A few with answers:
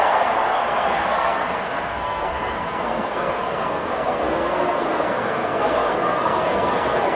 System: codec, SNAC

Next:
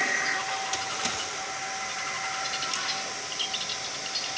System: none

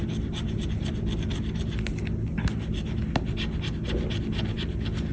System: none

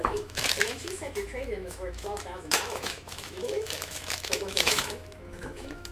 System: autoencoder, DAC-VAE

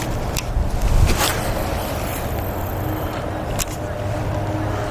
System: none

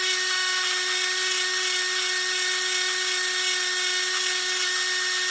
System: none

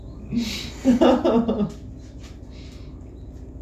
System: none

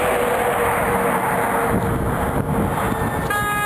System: none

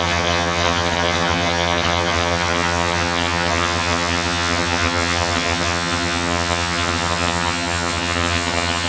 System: vocoder, HiFi-GAN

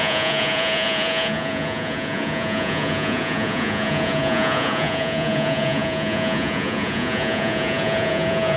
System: vocoder, Vocos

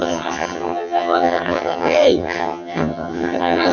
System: vocoder, HiFi-GAN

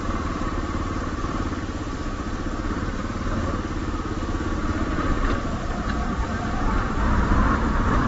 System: vocoder, BigVGAN v2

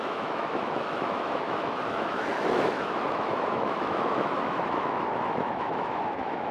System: autoencoder, DAC-VAE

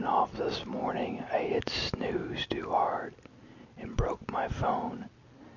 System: none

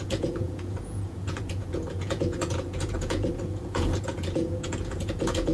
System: vocoder, Vocos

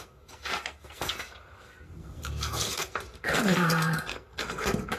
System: codec, SNAC